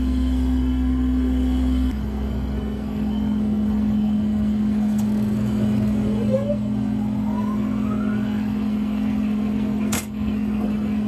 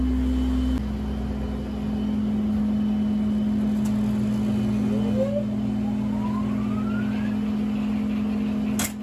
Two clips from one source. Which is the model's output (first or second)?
first